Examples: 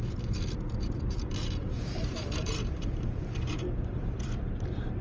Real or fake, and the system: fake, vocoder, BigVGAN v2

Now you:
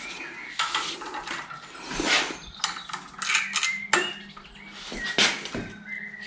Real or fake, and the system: real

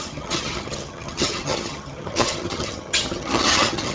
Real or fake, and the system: fake, vocoder, HiFi-GAN